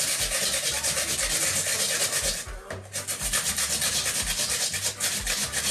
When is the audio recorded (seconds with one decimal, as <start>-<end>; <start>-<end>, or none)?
0.0-5.7